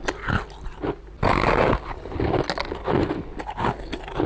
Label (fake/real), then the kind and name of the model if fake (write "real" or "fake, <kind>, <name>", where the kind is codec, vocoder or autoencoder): real